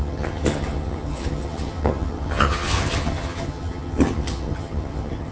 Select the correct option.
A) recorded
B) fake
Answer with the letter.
B